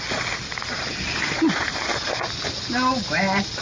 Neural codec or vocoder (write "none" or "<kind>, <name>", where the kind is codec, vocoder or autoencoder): none